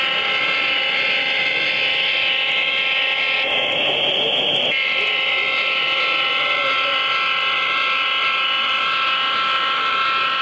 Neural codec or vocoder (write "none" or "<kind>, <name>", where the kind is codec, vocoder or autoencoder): none